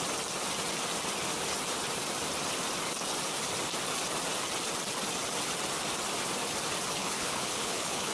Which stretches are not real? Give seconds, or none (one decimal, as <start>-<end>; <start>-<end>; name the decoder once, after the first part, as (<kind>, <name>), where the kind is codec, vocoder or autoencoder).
7.0-8.1 (codec, HILCodec)